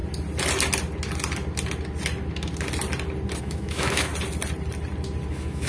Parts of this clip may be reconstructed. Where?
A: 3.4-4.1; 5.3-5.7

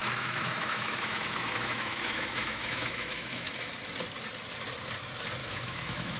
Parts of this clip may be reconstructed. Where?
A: 0.0-3.7; 5.4-6.2

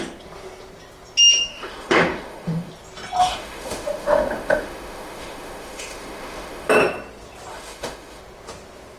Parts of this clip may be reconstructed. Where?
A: 1.4-2.7; 3.2-6.7; 7.5-8.2

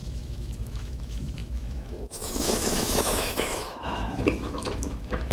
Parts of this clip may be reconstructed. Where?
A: 0.0-5.3

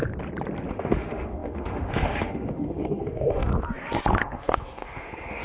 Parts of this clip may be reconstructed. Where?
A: 0.7-3.5; 4.2-5.4

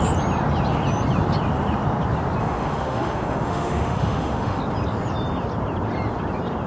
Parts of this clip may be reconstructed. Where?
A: 2.4-4.6

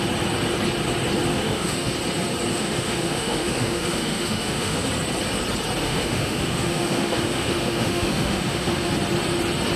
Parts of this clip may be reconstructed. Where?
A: 1.3-1.9; 2.5-4.9; 5.8-8.9